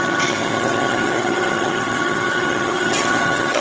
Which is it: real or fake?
fake